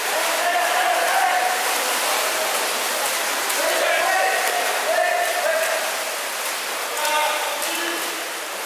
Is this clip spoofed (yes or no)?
no